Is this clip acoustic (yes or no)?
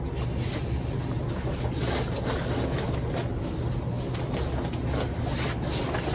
yes